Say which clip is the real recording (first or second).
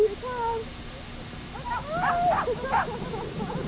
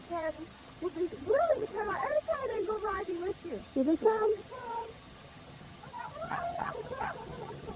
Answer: first